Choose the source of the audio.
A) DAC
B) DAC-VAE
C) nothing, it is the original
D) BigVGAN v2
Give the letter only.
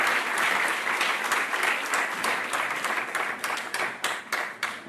C